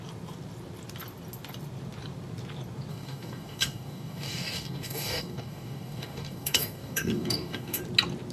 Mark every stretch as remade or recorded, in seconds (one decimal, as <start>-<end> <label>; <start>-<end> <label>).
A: 0.0-2.9 recorded; 2.9-7.8 remade; 7.8-8.3 recorded

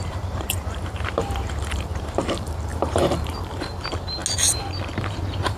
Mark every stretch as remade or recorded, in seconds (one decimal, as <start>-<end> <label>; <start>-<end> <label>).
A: 0.0-4.2 remade; 4.2-5.1 recorded; 5.1-5.6 remade

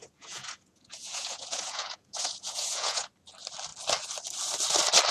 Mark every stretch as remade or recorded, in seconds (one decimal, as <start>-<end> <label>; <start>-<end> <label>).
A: 0.0-3.1 remade; 3.1-5.1 recorded

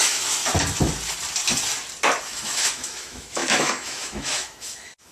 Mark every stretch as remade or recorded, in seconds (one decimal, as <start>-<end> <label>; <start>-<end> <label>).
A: 0.0-0.4 remade; 0.4-2.2 recorded; 2.2-5.1 remade

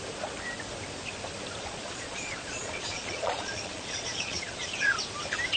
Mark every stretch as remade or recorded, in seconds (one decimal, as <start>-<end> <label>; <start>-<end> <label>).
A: 0.0-1.6 recorded; 1.6-5.0 remade; 5.0-5.6 recorded

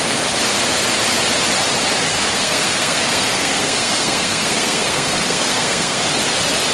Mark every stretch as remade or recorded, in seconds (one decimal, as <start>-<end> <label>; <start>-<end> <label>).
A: 0.0-2.1 recorded; 2.1-6.1 remade; 6.1-6.7 recorded

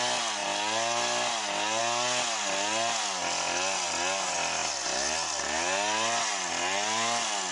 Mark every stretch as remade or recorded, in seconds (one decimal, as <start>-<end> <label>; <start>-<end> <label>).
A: 0.0-7.5 recorded